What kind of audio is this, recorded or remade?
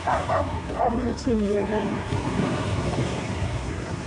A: remade